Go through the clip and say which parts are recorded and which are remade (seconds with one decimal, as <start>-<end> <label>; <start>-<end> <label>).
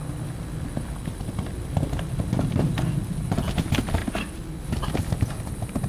0.0-5.9 recorded